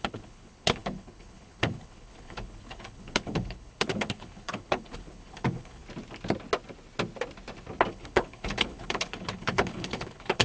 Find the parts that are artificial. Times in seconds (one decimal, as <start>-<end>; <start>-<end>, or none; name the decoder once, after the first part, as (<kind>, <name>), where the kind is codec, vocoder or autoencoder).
0.0-5.8 (codec, HILCodec); 7.9-10.4